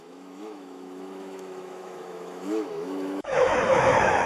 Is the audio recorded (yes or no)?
no